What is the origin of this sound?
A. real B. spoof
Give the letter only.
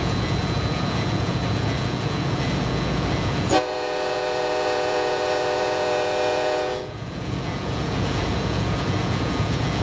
B